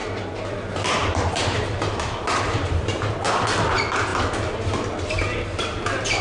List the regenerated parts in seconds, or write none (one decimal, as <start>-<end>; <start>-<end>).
0.0-3.1